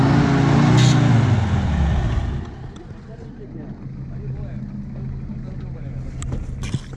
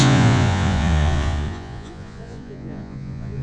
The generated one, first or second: second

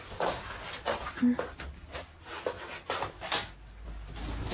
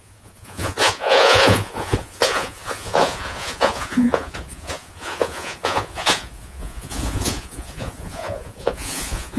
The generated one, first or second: second